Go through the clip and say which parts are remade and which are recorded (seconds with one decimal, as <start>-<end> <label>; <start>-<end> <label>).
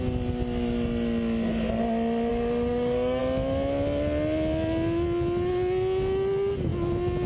0.0-2.3 recorded; 2.3-3.2 remade; 3.2-7.3 recorded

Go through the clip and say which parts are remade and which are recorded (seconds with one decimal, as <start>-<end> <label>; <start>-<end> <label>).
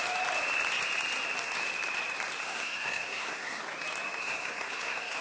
0.0-2.4 recorded; 2.4-3.6 remade; 3.6-4.2 recorded; 4.2-5.2 remade